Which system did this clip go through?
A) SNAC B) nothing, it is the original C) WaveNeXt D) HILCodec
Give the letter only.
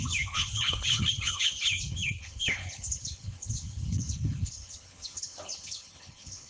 D